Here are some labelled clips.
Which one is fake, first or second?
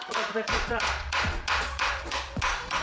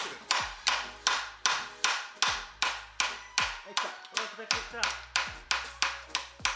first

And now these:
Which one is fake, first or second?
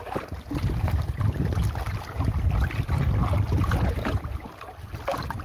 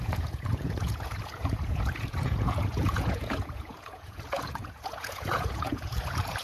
second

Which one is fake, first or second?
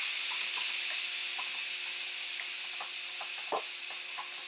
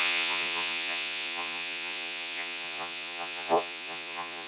second